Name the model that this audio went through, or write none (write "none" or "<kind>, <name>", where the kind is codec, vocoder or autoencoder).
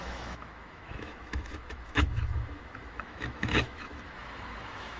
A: autoencoder, DAC-VAE